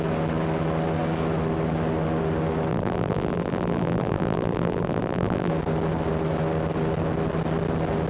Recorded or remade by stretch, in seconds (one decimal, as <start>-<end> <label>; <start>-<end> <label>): 0.0-2.7 recorded; 2.7-5.5 remade; 5.5-8.1 recorded